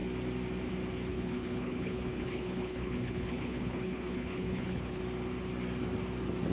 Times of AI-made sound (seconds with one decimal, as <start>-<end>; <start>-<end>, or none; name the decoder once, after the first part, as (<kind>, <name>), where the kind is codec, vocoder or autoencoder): 1.1-5.0 (codec, HILCodec)